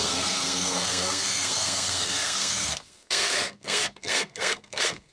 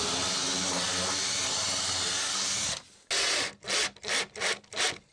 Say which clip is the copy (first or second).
first